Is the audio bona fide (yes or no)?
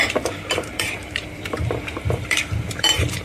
no